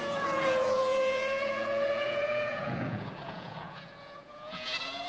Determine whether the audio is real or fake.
fake